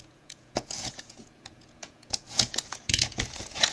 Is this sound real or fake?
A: fake